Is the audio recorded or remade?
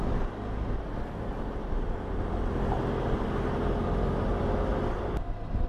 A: recorded